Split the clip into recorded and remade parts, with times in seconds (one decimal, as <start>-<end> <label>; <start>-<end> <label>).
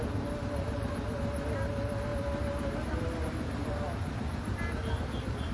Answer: 0.0-5.5 recorded